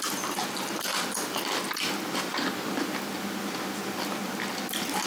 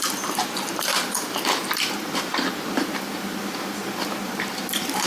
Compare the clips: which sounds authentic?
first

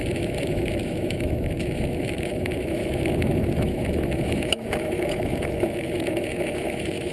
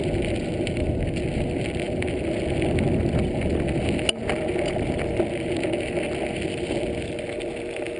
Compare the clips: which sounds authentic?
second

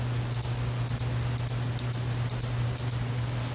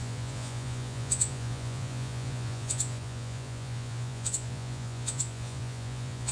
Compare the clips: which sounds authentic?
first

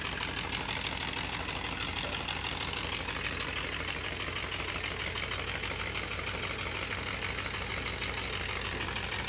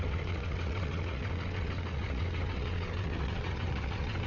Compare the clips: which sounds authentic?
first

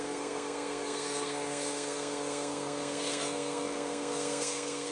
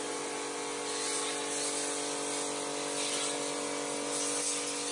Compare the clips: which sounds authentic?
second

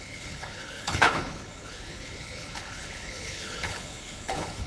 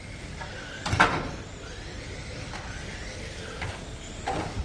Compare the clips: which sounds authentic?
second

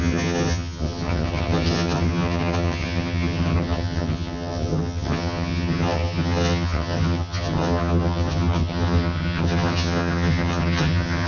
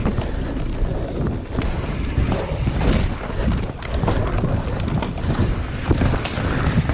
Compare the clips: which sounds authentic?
second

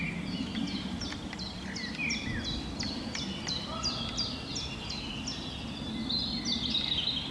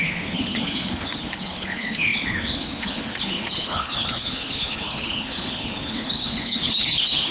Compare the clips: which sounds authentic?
first